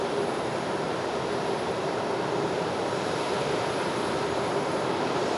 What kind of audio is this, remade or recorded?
remade